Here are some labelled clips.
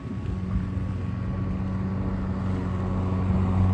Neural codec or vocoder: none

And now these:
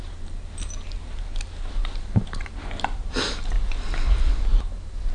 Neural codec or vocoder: none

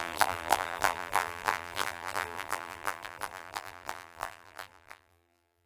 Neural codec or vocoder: vocoder, BigVGAN v2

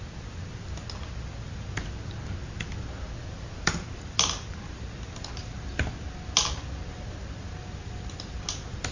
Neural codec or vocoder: none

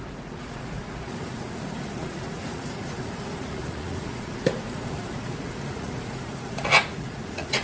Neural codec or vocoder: vocoder, Vocos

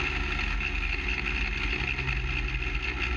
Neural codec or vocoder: none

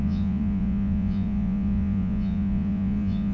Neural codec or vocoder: vocoder, Vocos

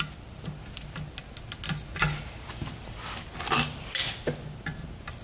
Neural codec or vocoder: none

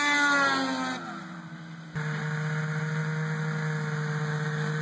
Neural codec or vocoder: none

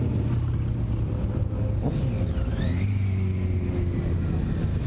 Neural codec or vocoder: none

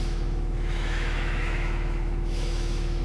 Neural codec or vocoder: autoencoder, DAC-VAE